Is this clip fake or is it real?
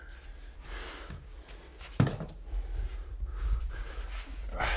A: real